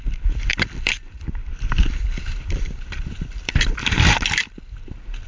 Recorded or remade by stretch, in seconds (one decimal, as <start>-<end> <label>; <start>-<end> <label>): 0.0-0.9 remade; 0.9-1.6 recorded; 1.6-5.3 remade